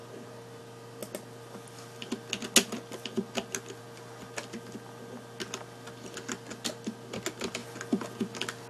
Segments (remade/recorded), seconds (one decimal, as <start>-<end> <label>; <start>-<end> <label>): 0.0-8.7 recorded